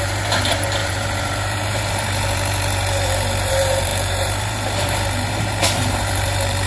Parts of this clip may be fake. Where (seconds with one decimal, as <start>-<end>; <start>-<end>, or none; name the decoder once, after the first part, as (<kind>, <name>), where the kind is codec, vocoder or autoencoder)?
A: 0.0-6.7 (vocoder, BigVGAN v2)